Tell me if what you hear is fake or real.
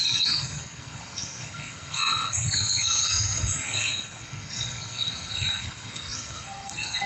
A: fake